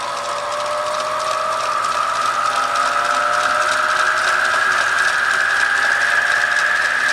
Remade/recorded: recorded